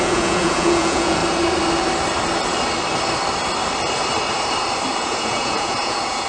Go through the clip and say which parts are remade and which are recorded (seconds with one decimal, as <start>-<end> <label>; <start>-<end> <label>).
0.0-1.2 remade; 1.2-5.0 recorded; 5.0-6.3 remade